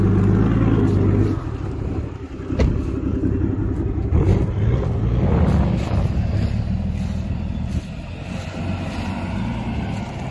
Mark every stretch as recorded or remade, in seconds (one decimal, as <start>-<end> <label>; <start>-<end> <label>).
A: 0.0-10.3 recorded